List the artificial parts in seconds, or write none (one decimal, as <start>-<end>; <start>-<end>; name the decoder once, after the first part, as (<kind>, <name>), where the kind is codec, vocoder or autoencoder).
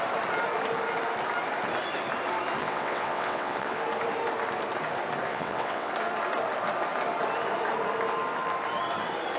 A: 2.6-3.8 (vocoder, WaveNeXt); 5.3-5.9